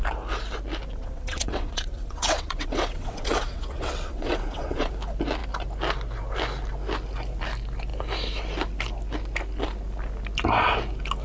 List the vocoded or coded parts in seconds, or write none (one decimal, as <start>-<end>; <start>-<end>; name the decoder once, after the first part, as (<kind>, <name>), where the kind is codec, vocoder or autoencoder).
0.9-4.9 (vocoder, WaveNeXt)